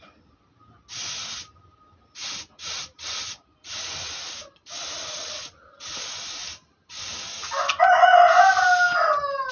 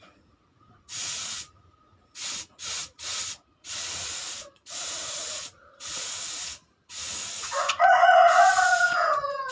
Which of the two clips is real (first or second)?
first